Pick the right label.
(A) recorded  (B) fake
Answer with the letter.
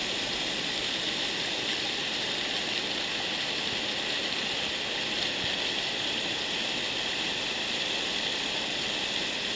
A